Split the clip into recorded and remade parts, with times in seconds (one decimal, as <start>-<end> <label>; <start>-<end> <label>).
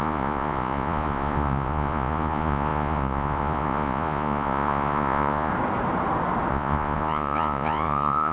0.0-5.5 remade; 5.5-6.5 recorded; 6.5-8.3 remade